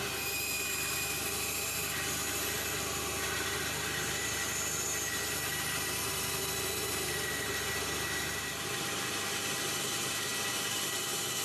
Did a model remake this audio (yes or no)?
no